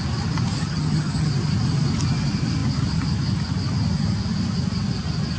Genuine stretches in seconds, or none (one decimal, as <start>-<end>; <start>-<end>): 0.0-0.6; 1.3-5.4